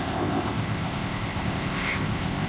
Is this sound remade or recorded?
remade